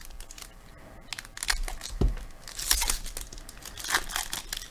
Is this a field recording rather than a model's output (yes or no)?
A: yes